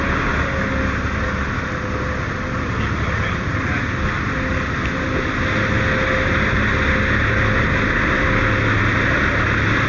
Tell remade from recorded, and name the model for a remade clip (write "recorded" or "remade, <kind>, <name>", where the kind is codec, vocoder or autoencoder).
recorded